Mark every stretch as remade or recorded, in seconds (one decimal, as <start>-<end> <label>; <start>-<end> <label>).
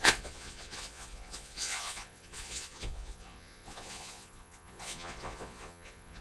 0.0-6.2 remade